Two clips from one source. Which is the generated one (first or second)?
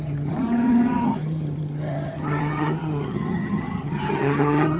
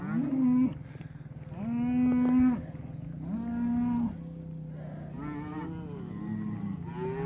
first